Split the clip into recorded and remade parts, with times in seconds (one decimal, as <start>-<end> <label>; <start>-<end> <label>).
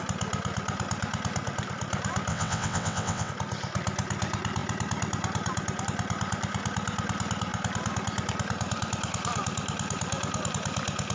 0.0-2.3 recorded; 2.3-3.3 remade; 3.3-11.1 recorded